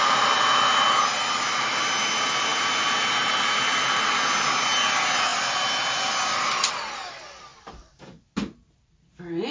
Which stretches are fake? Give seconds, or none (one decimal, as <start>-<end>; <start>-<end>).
none